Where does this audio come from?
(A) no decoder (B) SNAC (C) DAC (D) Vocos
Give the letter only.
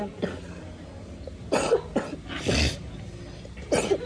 A